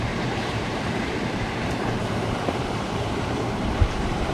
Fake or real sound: fake